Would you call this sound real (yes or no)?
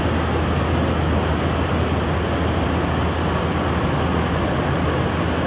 yes